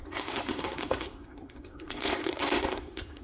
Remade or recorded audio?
remade